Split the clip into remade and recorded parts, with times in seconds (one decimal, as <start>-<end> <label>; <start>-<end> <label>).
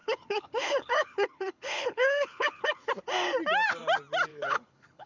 0.0-2.9 remade; 2.9-4.3 recorded; 4.3-5.1 remade